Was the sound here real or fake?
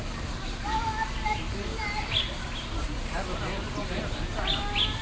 real